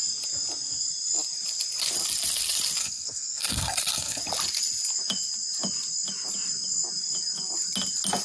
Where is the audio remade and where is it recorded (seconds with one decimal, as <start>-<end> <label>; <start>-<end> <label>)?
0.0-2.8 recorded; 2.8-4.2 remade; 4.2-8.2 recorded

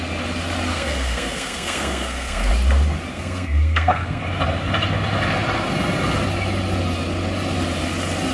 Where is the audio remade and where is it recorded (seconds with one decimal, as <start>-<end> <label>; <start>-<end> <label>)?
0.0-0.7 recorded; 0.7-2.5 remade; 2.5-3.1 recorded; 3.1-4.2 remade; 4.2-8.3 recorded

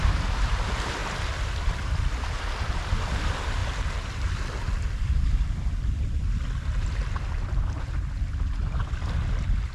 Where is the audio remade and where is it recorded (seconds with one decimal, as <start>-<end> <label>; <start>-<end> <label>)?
0.0-9.7 recorded

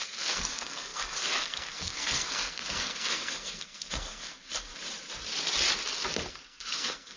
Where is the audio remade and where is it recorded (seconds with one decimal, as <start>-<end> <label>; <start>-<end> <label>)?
0.0-4.7 remade; 4.7-6.3 recorded; 6.3-7.2 remade

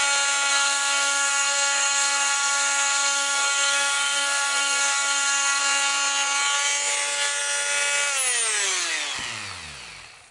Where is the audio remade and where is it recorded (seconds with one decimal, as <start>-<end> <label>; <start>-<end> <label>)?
0.0-0.5 recorded; 0.5-5.6 remade; 5.6-10.3 recorded